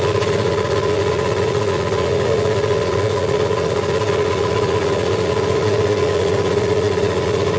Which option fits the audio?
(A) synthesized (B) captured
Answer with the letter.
A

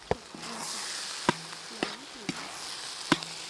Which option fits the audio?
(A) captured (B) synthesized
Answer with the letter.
A